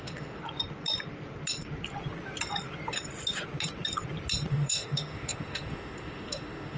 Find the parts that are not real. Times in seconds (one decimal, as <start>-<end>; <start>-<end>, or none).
0.0-0.4; 4.5-6.8